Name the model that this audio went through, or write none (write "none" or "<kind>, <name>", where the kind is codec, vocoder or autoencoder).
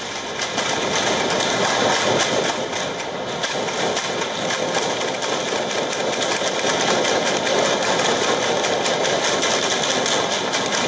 none